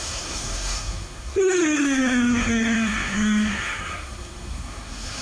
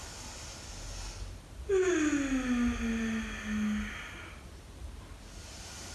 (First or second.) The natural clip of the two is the second